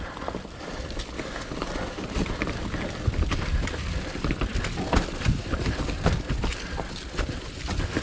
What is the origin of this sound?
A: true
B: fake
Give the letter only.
A